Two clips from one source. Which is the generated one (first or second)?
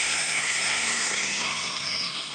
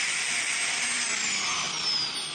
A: first